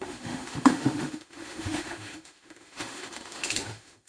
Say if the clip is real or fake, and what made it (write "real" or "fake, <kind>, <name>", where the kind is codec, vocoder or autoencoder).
fake, autoencoder, DAC-VAE